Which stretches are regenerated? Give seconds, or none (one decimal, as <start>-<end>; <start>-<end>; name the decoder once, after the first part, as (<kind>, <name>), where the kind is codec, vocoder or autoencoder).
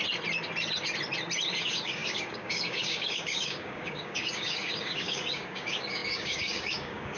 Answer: 1.6-7.2 (codec, DAC)